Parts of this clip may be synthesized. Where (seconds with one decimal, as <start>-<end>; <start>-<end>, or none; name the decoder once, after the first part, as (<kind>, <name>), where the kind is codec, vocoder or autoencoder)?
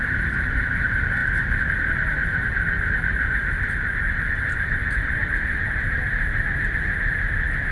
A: none